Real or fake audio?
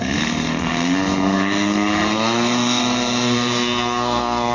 fake